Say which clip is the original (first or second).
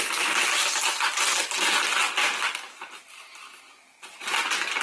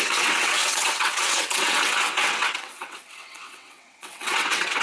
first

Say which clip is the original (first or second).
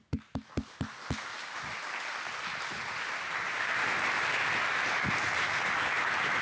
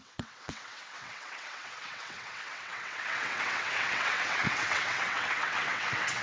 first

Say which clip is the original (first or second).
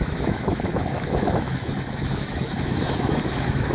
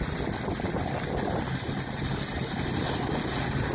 second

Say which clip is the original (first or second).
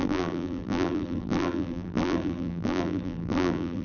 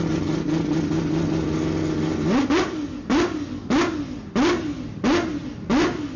second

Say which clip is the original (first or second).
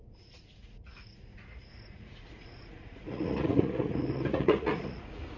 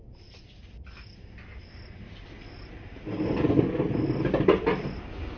second